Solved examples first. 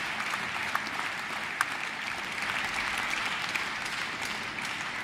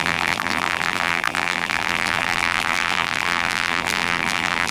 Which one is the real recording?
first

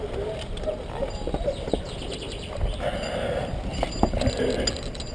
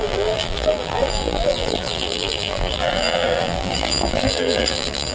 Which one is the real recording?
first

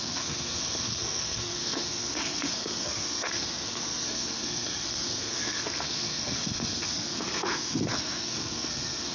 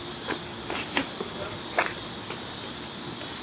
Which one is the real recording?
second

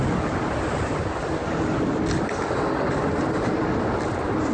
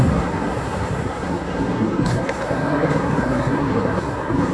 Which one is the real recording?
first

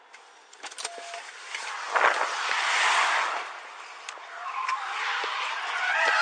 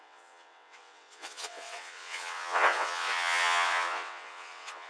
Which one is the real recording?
first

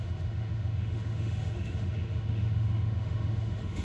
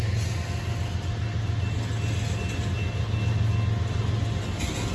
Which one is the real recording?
second